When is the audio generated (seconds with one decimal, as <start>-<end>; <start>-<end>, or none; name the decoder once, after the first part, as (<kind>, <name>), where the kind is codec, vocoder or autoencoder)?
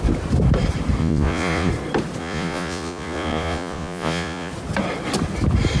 1.0-1.7 (vocoder, Vocos); 2.2-4.5